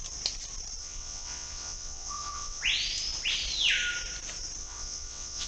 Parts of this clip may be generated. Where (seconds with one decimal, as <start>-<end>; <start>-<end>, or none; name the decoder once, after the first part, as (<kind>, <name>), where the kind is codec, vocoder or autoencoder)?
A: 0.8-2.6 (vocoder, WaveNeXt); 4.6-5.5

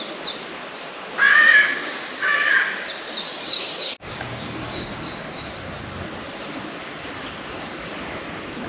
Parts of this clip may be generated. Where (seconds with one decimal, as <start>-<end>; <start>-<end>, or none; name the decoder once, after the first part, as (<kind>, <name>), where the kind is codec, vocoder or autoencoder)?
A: 1.3-2.9 (codec, DAC); 3.3-5.1

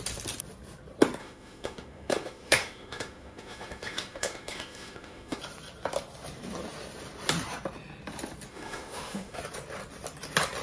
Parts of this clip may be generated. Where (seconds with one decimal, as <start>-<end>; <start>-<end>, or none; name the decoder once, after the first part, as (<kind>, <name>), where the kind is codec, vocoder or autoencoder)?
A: 1.2-5.4 (autoencoder, DAC-VAE); 8.5-9.4

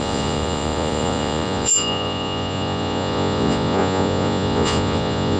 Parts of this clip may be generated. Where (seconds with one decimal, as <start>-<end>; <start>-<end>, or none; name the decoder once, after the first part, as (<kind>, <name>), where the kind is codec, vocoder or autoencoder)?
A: 0.0-5.4 (vocoder, Vocos)

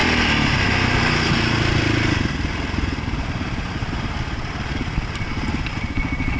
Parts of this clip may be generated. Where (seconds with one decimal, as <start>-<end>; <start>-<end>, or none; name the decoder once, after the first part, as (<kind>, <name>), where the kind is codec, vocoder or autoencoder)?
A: none